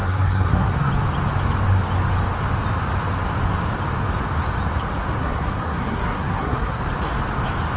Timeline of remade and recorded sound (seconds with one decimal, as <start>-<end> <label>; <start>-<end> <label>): 0.0-0.9 remade; 0.9-5.2 recorded; 5.2-6.8 remade; 6.8-7.8 recorded